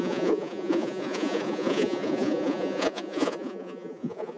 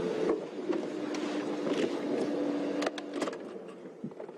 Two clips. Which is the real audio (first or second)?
second